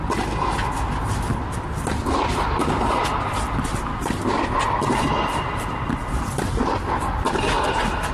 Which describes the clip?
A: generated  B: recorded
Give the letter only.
B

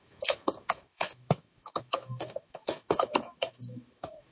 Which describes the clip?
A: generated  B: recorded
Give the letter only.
A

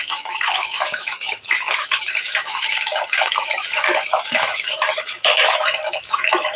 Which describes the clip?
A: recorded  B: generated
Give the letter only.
B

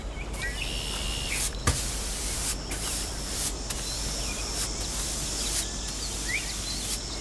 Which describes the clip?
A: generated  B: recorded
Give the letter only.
B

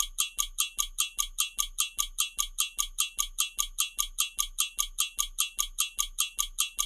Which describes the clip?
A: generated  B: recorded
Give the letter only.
B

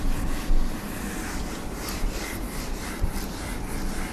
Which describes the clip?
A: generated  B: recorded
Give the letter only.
B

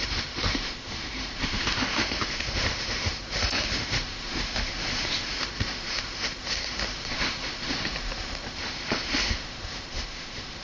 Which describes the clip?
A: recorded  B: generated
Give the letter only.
B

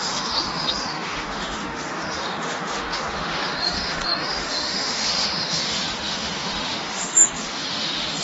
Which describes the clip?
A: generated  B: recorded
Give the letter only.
A